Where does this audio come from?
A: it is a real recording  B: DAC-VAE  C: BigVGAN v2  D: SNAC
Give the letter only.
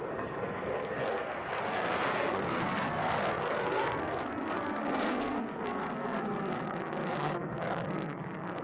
D